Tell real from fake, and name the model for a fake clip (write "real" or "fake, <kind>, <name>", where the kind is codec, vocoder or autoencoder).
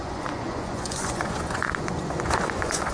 fake, vocoder, Vocos